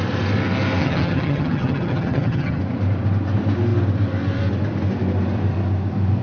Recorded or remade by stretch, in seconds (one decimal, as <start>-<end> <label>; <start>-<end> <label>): 0.0-0.8 recorded; 0.8-2.6 remade; 2.6-6.2 recorded